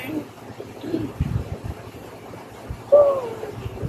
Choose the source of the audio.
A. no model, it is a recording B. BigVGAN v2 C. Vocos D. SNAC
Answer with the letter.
A